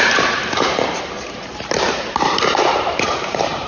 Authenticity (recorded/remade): remade